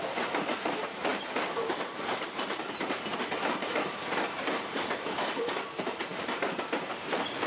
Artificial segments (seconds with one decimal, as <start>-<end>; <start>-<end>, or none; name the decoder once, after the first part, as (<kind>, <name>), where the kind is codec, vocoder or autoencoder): 0.0-7.5 (vocoder, BigVGAN v2)